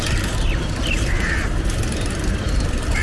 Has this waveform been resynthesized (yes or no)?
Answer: no